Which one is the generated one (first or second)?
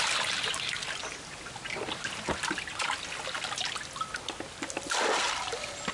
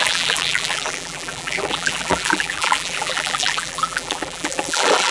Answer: second